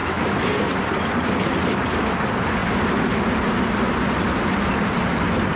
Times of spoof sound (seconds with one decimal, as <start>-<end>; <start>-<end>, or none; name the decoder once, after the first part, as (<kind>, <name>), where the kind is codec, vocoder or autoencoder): 0.0-0.5 (autoencoder, DAC-VAE)